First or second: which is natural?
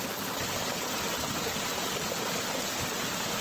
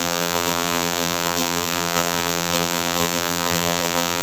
first